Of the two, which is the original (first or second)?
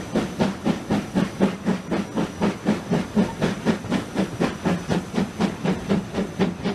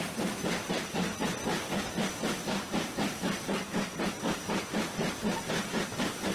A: first